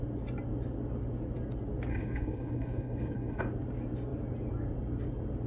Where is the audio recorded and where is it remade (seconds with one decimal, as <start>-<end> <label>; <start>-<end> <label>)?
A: 0.0-1.9 recorded; 1.9-3.4 remade; 3.4-5.5 recorded